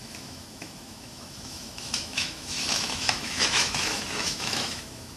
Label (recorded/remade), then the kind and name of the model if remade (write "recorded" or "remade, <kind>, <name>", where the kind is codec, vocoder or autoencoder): remade, autoencoder, DAC-VAE